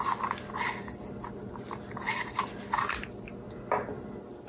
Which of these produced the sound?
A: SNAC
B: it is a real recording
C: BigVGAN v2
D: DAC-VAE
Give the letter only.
B